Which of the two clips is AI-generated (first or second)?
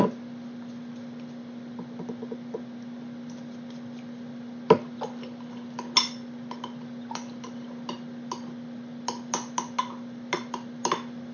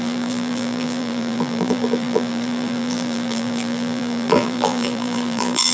second